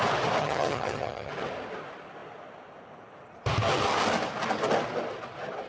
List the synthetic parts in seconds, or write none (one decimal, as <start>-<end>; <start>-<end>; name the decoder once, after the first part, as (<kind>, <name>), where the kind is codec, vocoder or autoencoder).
0.4-1.3 (vocoder, HiFi-GAN)

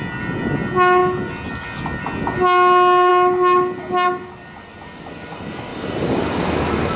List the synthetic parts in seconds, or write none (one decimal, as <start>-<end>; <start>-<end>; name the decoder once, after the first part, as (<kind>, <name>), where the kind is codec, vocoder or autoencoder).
none

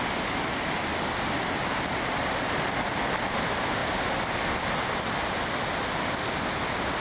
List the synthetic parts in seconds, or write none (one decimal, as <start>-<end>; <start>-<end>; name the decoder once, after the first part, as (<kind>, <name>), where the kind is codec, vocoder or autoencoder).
none